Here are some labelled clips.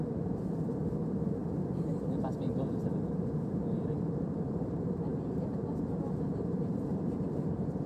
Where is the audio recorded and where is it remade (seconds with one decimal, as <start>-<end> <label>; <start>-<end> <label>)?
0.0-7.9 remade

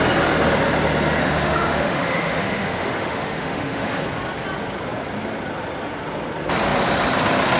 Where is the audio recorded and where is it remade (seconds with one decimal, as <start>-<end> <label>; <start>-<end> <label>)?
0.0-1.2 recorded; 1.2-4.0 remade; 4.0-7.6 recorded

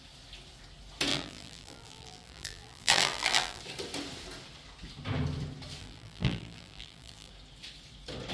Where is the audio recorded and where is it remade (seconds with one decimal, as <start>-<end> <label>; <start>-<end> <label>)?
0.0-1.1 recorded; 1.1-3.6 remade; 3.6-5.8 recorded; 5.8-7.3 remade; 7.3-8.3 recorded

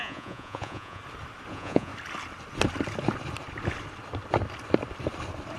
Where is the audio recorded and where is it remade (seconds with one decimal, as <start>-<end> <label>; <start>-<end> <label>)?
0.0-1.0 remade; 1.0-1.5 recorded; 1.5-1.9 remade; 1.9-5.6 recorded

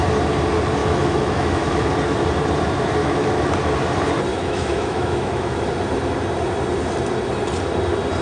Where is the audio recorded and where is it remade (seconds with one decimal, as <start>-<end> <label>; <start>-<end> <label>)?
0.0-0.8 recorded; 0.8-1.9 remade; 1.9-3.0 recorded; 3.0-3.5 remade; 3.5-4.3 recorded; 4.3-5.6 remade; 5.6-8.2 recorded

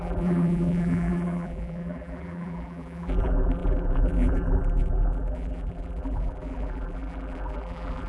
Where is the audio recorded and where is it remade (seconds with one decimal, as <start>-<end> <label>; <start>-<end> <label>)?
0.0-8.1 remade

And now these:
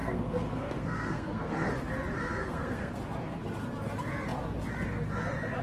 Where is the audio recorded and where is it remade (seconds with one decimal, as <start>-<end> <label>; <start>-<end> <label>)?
0.0-1.7 remade; 1.7-2.4 recorded; 2.4-3.0 remade; 3.0-5.6 recorded